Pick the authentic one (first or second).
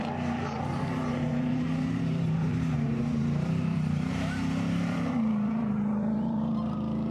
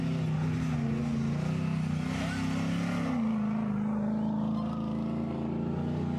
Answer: second